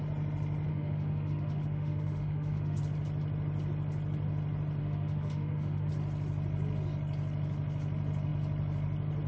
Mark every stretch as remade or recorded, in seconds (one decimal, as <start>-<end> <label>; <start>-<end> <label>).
0.0-0.7 recorded; 0.7-2.8 remade; 2.8-4.8 recorded; 4.8-5.9 remade; 5.9-9.3 recorded